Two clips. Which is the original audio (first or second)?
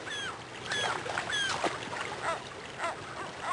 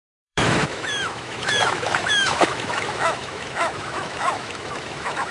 first